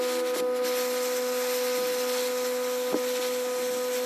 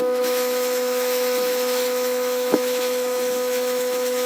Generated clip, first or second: second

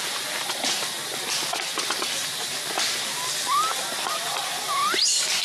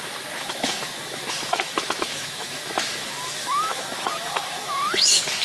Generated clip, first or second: second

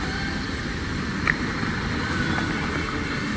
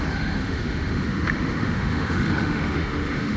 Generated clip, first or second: second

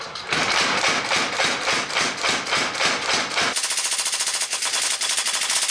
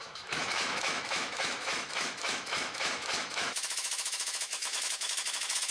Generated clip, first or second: second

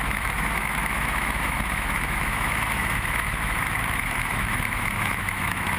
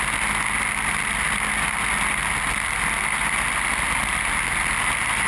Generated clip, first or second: first